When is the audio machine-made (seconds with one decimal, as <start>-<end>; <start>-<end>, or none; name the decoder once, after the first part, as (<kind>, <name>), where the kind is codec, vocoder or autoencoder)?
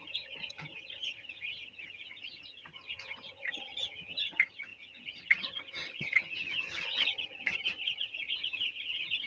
0.0-9.3 (vocoder, HiFi-GAN)